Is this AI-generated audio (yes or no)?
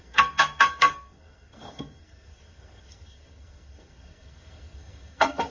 yes